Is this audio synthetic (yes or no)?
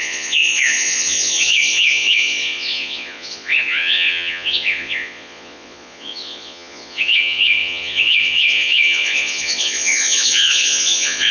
yes